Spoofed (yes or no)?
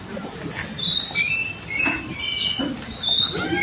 no